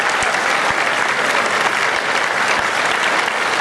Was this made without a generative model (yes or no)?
yes